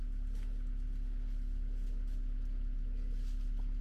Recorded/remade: recorded